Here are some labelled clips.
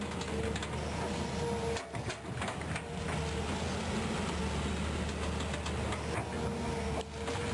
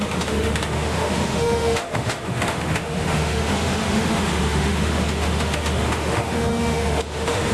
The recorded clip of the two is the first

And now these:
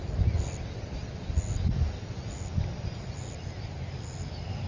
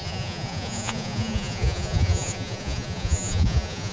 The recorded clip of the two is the first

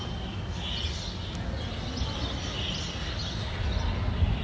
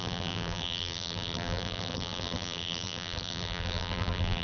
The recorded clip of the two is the first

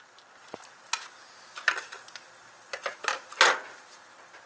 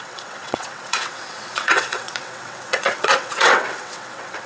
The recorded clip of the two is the first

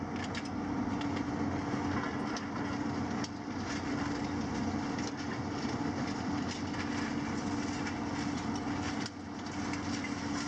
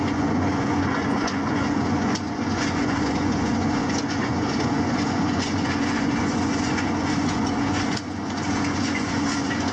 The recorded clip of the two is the first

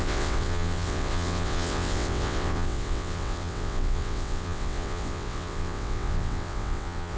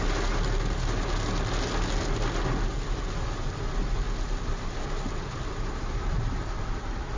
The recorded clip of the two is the second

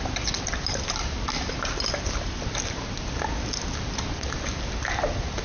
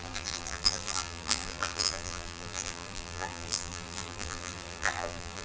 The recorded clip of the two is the first